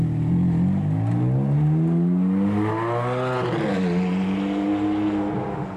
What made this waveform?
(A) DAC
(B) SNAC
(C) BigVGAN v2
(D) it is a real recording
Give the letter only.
D